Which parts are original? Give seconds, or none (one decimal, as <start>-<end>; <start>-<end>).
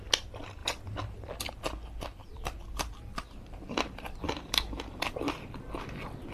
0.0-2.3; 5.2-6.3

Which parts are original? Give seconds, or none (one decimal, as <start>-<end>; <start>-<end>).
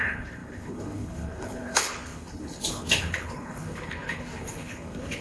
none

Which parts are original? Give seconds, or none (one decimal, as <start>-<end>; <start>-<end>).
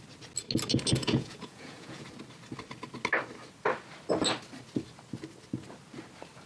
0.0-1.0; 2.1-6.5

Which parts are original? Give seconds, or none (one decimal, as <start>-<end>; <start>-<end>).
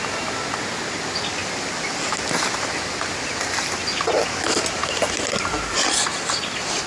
0.0-6.9